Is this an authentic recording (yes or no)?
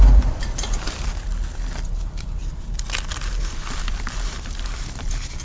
no